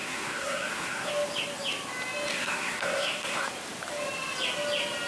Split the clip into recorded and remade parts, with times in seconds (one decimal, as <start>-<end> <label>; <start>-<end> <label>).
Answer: 0.0-1.1 remade; 1.1-2.3 recorded; 2.3-3.4 remade; 3.4-5.1 recorded